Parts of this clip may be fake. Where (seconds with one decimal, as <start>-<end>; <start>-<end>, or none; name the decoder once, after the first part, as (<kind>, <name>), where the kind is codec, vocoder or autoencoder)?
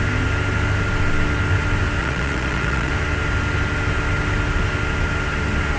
2.0-2.9 (vocoder, Vocos)